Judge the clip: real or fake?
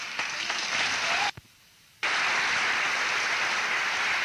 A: real